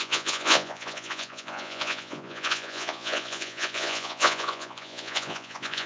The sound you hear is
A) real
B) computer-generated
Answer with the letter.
B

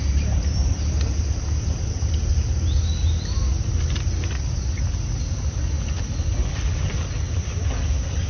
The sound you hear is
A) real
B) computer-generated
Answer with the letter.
A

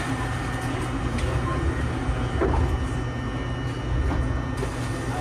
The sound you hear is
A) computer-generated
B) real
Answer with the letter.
B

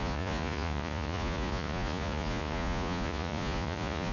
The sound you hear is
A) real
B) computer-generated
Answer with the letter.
B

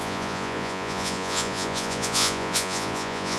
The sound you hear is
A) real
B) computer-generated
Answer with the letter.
B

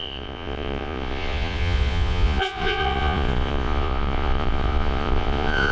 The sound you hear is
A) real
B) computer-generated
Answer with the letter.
B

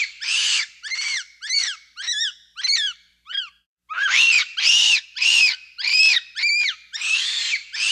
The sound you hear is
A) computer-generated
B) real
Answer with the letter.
A